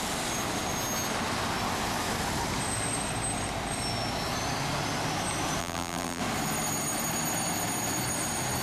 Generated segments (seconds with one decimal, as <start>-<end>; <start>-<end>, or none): 5.6-6.2